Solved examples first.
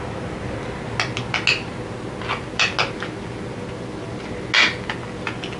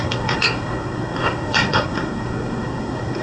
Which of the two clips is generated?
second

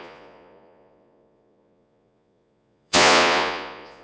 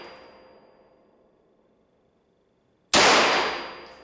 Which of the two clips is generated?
first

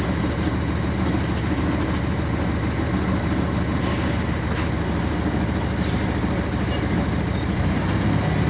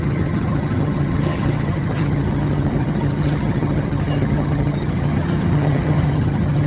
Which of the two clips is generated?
second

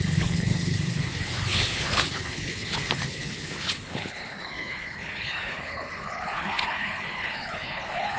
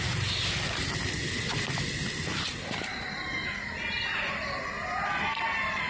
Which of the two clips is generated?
first